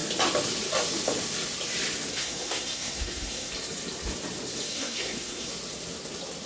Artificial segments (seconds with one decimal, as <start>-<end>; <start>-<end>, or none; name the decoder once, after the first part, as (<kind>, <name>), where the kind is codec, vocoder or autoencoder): 2.1-3.5 (codec, SNAC); 4.7-5.5